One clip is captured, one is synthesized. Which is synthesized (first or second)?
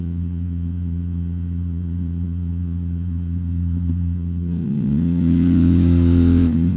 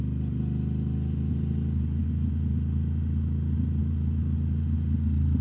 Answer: first